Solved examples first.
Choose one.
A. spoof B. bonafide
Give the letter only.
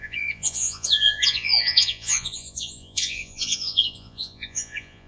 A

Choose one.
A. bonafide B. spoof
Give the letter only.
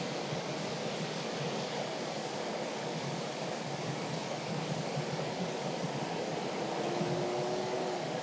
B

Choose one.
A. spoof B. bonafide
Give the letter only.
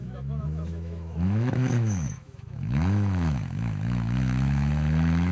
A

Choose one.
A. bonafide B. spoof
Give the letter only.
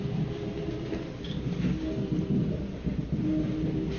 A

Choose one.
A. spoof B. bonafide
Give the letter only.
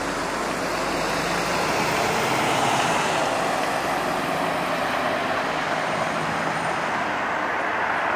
B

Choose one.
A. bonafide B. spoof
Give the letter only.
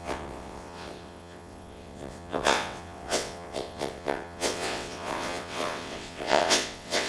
B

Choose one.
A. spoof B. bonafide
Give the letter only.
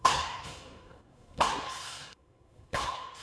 A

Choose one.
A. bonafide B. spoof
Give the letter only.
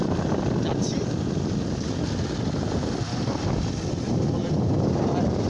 A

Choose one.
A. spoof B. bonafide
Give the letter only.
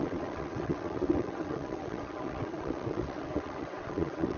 A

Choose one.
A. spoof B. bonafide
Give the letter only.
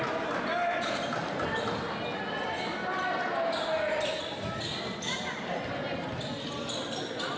B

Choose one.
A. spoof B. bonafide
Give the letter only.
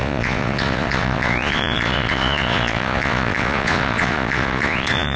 A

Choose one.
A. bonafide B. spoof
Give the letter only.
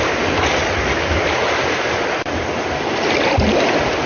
A